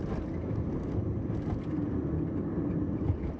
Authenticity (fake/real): real